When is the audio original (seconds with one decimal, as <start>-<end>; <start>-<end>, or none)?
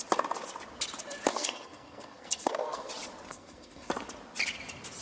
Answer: 0.0-1.3; 2.9-3.3; 3.9-5.0